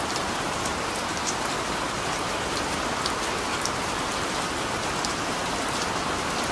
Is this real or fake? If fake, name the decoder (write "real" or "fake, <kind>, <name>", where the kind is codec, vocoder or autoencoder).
real